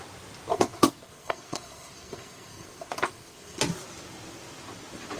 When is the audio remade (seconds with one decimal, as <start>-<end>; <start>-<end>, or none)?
0.5-3.6